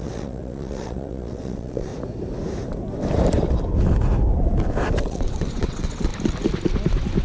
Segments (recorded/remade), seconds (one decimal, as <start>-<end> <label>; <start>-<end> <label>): 0.0-1.9 remade; 1.9-5.0 recorded; 5.0-6.1 remade; 6.1-7.2 recorded